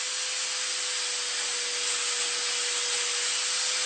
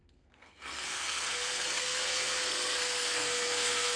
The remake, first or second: second